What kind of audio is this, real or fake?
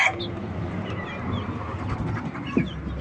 real